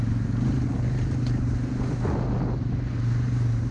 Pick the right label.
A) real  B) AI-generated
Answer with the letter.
A